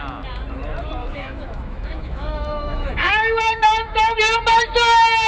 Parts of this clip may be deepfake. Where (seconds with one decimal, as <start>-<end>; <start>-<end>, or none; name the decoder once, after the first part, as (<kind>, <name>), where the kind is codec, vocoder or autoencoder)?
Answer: 1.0-4.2 (autoencoder, DAC-VAE)